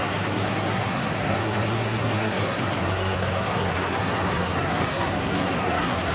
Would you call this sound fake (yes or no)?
yes